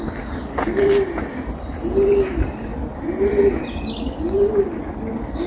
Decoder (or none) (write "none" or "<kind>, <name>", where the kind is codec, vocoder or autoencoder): none